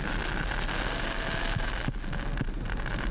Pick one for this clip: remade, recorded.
recorded